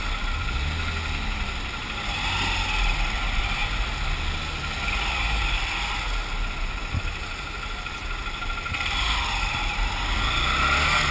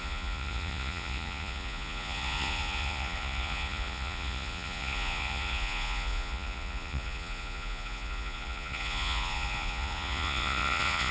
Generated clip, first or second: second